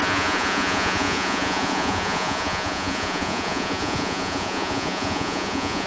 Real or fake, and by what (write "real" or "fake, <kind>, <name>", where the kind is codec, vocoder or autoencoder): fake, vocoder, Vocos